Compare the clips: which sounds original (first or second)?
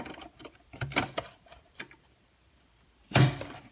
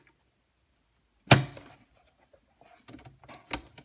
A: second